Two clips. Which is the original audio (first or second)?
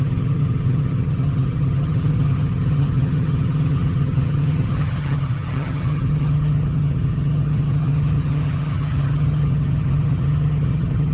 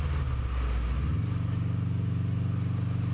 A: second